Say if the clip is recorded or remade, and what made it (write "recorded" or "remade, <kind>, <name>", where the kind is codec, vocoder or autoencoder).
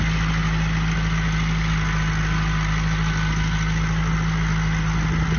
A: recorded